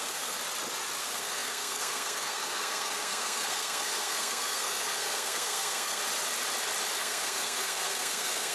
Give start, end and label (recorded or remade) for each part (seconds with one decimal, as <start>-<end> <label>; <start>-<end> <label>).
0.0-0.4 remade; 0.4-1.0 recorded; 1.0-6.0 remade; 6.0-7.0 recorded; 7.0-8.5 remade